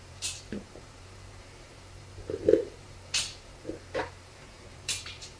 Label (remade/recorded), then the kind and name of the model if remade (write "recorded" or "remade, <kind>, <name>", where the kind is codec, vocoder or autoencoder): remade, vocoder, BigVGAN v2